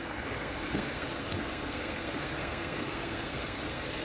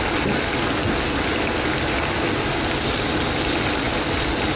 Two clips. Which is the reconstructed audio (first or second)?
first